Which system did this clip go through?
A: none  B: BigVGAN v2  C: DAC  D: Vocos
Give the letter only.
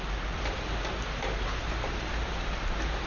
A